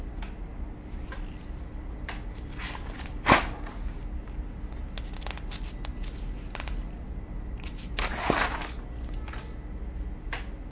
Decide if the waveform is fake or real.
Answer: real